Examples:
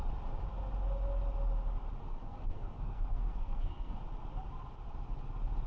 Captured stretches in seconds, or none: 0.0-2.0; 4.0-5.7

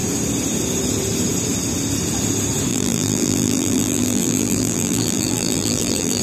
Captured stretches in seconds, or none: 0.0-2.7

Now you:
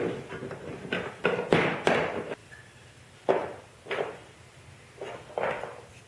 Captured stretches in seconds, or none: 0.0-6.1

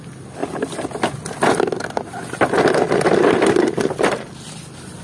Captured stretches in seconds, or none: 0.0-5.0